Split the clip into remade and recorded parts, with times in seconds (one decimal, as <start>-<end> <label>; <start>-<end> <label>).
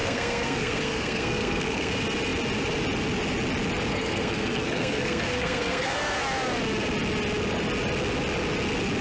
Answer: 0.0-1.9 remade; 1.9-3.9 recorded; 3.9-6.0 remade; 6.0-9.0 recorded